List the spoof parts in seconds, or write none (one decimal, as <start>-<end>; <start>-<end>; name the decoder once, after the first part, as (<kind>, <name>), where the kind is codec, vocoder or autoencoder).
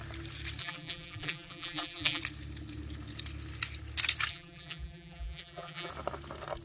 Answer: 0.6-2.2 (vocoder, BigVGAN v2); 4.3-5.9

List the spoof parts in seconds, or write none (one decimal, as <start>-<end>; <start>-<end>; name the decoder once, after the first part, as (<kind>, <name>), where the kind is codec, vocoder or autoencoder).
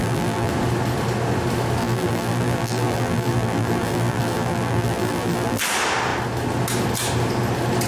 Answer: 0.0-0.5 (vocoder, BigVGAN v2); 1.8-5.6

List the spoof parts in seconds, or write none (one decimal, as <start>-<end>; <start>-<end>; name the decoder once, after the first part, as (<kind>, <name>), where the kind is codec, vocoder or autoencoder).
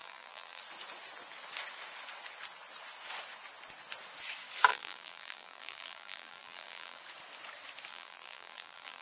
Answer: 0.0-0.6 (vocoder, BigVGAN v2); 4.7-7.0; 7.9-9.0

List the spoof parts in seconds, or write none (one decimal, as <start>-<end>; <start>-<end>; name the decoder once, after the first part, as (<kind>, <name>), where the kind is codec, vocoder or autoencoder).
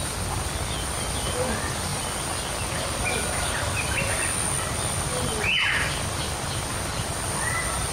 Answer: none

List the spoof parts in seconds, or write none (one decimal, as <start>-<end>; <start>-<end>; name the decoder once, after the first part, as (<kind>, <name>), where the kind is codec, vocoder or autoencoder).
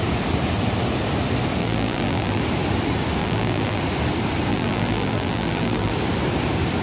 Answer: 1.6-2.4 (vocoder, BigVGAN v2); 3.2-3.8; 4.5-5.9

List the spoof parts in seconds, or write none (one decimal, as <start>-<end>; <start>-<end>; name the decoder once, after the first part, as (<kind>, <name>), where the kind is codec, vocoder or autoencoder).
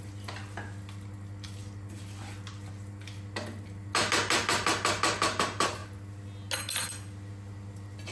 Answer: none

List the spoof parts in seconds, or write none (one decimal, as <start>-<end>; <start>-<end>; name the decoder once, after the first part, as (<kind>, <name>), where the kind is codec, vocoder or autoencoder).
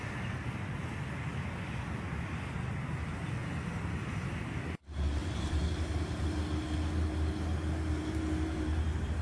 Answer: 5.2-5.7 (vocoder, BigVGAN v2)